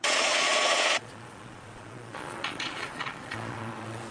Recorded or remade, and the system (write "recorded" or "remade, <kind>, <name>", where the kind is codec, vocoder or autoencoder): remade, vocoder, Vocos